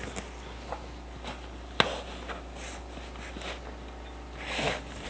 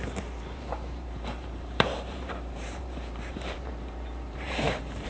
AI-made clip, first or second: second